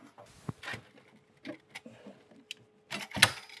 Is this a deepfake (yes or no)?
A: no